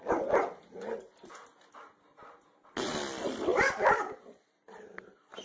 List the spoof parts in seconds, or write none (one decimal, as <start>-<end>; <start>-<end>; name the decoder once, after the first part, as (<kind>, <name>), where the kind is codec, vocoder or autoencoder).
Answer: none